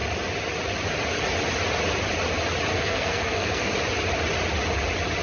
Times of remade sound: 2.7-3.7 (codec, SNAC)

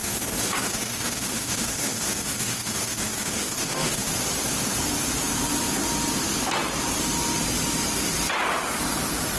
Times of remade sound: 0.0-4.1 (codec, DAC)

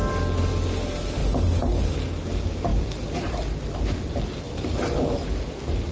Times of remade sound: 2.7-5.0 (vocoder, BigVGAN v2)

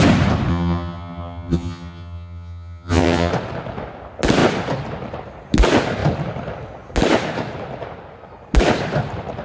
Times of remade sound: 0.5-3.3 (vocoder, HiFi-GAN)

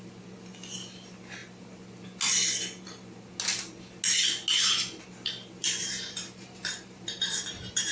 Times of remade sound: 5.6-7.9 (vocoder, BigVGAN v2)